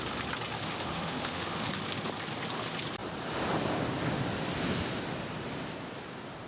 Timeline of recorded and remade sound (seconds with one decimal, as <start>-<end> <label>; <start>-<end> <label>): 0.0-0.6 recorded; 0.6-1.7 remade; 1.7-6.5 recorded